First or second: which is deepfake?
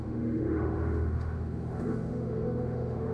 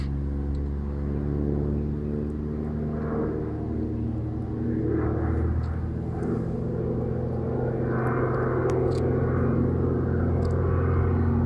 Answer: first